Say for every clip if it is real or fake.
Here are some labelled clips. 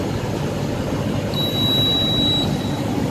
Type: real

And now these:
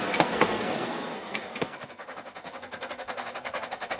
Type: fake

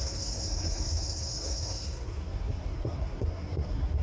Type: fake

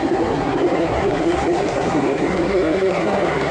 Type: fake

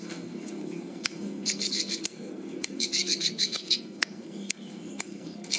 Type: fake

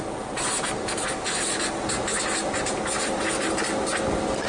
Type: real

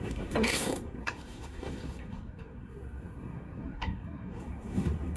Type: fake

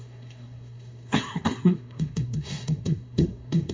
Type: fake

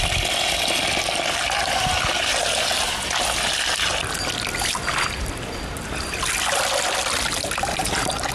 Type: real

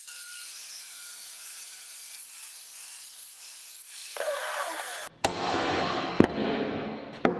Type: fake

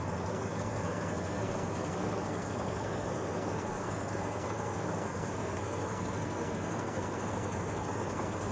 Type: fake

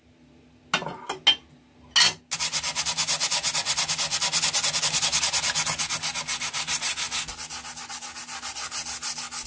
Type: real